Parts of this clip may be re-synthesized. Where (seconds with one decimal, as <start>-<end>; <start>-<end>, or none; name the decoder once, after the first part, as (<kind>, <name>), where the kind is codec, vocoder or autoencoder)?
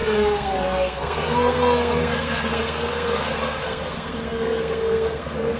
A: 0.0-5.6 (codec, SNAC)